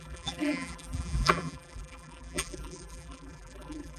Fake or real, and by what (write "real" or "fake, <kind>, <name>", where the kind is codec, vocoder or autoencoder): fake, vocoder, BigVGAN v2